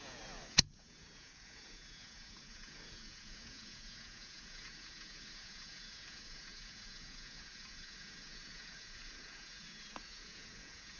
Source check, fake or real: fake